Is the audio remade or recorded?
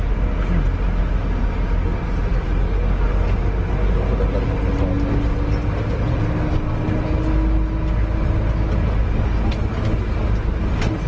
recorded